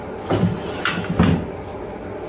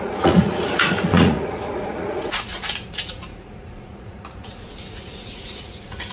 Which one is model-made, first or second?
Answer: second